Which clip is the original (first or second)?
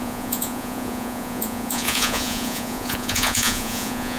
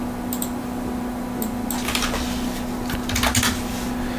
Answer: second